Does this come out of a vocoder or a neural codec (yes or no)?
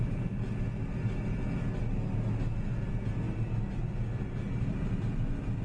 no